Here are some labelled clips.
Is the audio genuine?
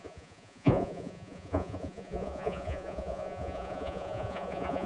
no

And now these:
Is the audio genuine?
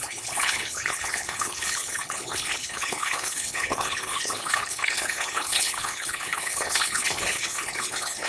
no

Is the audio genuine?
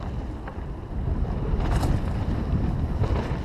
yes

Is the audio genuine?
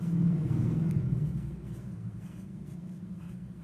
no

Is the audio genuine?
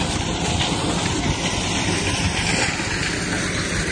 yes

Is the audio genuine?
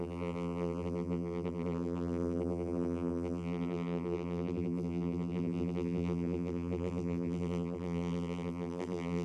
no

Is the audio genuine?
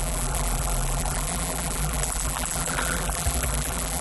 no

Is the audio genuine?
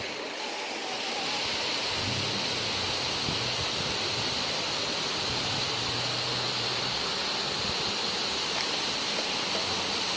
yes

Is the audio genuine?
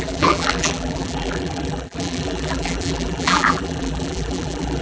no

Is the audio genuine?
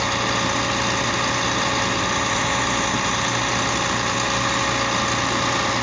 yes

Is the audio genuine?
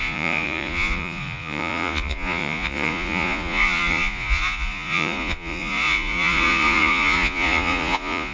no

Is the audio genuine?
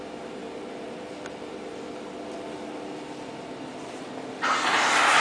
yes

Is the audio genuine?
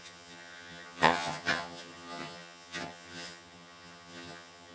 no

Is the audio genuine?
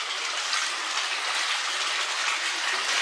yes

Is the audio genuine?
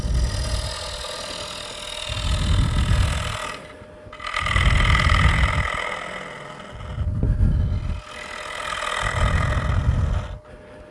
yes